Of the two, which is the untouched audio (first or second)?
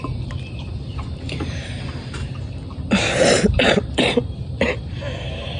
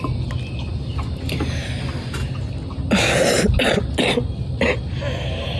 second